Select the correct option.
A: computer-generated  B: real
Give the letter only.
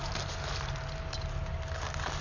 B